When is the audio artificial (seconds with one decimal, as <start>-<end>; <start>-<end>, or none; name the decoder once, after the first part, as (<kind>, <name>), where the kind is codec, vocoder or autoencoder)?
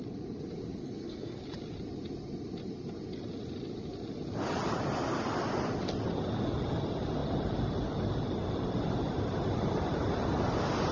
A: 0.8-1.4 (codec, SNAC)